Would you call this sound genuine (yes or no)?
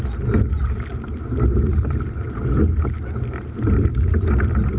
yes